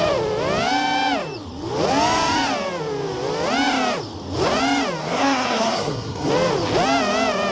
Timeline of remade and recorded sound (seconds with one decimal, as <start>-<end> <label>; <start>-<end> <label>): 0.0-5.0 recorded; 5.0-6.3 remade; 6.3-7.5 recorded